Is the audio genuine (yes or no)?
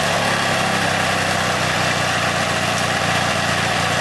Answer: yes